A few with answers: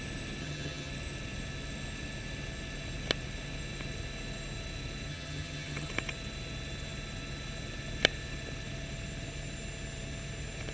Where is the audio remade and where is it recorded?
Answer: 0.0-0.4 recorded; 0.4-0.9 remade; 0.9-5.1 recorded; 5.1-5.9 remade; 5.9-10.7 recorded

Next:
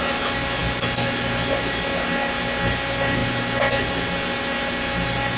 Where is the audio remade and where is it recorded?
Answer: 0.0-5.4 recorded